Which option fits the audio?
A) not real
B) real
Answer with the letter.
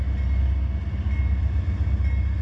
B